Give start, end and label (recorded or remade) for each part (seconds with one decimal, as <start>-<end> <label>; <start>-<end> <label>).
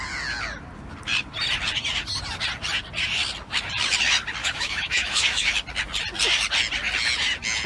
0.0-4.4 recorded; 4.4-5.5 remade; 5.5-7.7 recorded